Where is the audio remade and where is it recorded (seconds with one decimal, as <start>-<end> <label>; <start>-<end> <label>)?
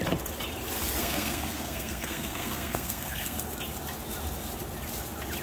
0.0-1.0 recorded; 1.0-3.4 remade; 3.4-5.4 recorded